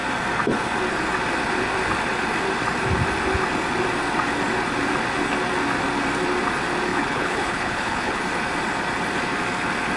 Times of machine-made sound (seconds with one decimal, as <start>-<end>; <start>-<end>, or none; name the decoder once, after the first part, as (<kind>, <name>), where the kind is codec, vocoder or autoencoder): 6.9-8.2 (codec, HILCodec)